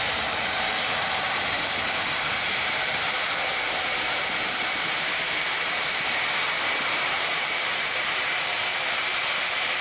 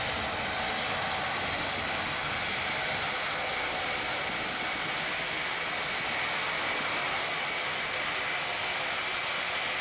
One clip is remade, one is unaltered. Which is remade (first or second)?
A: first